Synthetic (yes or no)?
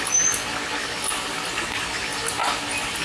no